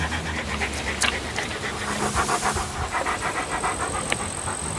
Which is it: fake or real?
real